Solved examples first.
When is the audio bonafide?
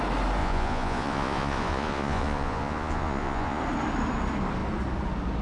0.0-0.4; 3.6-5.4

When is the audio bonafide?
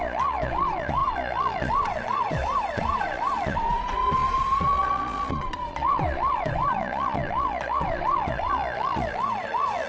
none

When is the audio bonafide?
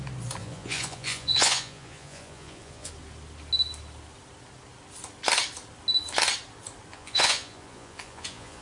0.0-0.4; 2.9-6.9